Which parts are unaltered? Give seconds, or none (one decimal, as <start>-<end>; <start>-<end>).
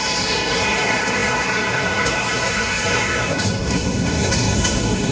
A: none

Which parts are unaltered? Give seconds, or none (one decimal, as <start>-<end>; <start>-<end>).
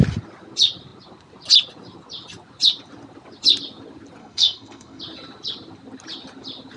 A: 0.0-4.2; 5.0-6.8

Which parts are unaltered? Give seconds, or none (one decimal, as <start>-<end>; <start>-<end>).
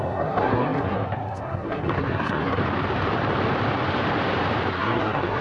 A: 2.6-4.7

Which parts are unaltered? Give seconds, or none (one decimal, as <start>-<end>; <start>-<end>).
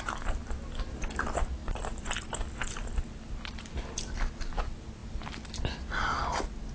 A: 0.0-6.7